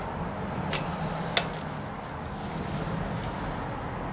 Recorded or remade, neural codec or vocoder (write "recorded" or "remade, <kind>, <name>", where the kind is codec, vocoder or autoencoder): recorded